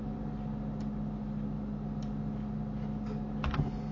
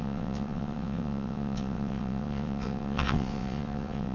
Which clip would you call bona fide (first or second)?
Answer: first